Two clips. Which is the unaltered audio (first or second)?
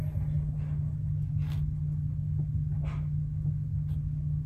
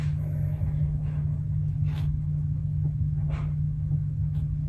first